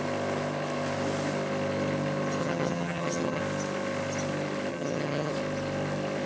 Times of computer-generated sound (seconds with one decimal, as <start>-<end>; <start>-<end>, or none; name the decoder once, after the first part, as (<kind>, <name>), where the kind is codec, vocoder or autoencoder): 2.4-3.4 (vocoder, HiFi-GAN); 4.7-5.3